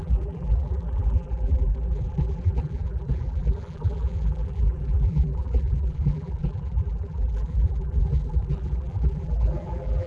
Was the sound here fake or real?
fake